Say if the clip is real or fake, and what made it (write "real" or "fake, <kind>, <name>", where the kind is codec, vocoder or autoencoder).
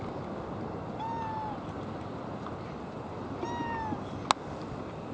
real